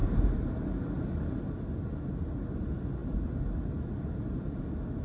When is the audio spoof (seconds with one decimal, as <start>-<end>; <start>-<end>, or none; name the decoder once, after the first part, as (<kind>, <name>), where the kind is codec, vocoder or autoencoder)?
0.0-0.6 (vocoder, BigVGAN v2)

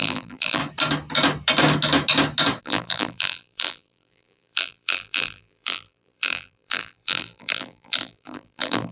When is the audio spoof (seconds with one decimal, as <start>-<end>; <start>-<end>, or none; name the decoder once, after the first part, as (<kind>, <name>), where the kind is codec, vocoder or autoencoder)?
0.0-0.6 (vocoder, BigVGAN v2); 2.6-8.9

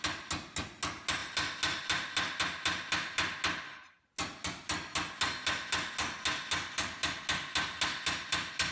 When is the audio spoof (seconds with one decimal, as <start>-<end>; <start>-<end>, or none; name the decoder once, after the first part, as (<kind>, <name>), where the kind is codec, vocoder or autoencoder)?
none

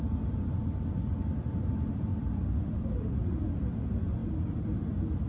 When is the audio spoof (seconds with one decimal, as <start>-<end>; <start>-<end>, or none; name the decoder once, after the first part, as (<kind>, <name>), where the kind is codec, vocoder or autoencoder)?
2.1-3.0 (vocoder, BigVGAN v2); 4.2-4.7

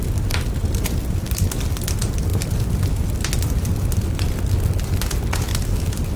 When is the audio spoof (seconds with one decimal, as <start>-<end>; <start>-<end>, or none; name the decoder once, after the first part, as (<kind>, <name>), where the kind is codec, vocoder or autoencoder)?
none

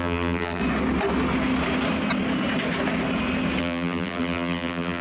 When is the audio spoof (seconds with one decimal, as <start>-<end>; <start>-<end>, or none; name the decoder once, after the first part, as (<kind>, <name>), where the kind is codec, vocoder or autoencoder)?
0.0-0.6 (vocoder, BigVGAN v2); 3.6-5.0

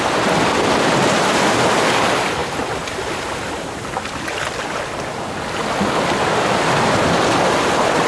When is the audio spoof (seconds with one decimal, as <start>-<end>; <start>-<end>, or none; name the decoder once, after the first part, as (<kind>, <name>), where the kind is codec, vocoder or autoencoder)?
none

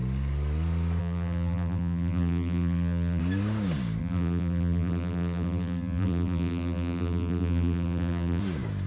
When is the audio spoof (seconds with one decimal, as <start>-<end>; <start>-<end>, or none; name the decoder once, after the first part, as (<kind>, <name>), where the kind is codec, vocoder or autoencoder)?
1.0-3.2 (vocoder, BigVGAN v2); 4.0-8.4